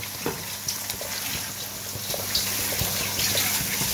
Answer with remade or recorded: recorded